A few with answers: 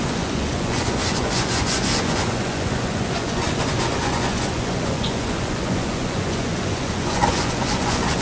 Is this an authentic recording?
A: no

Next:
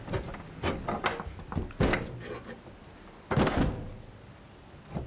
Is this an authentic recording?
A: yes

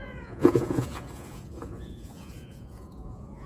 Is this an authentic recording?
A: no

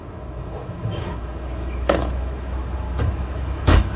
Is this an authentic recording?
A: no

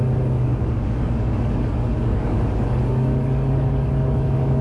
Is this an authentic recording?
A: no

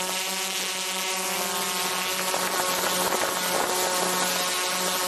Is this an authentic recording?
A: yes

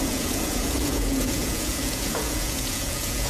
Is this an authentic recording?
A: no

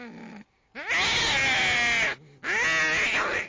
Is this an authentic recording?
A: yes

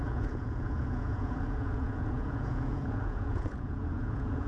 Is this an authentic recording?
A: no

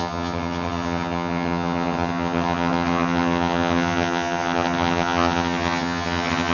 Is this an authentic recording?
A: no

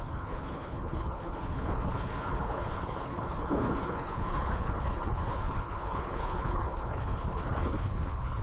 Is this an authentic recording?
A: no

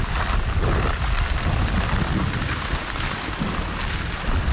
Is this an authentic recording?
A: yes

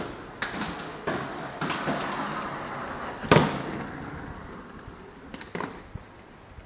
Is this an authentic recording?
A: yes